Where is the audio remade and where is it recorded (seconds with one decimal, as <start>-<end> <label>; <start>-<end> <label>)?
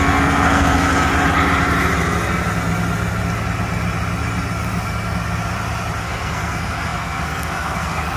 0.0-1.1 remade; 1.1-6.0 recorded; 6.0-8.2 remade